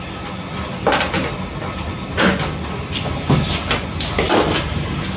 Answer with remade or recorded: recorded